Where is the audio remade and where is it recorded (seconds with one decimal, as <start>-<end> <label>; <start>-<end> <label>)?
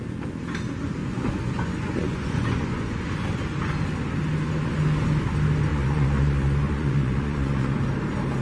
0.0-1.0 recorded; 1.0-3.1 remade; 3.1-5.7 recorded; 5.7-7.8 remade; 7.8-8.4 recorded